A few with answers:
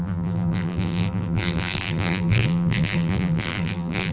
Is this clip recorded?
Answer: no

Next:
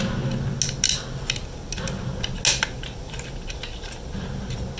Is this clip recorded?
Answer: yes